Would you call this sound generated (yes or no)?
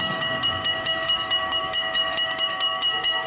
yes